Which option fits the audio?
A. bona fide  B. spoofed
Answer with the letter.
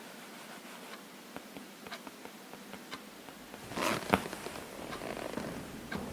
A